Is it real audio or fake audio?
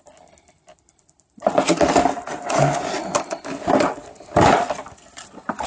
real